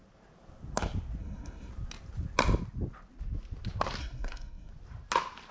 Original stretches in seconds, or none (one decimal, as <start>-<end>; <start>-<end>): 0.0-1.2; 1.7-4.0; 4.7-5.5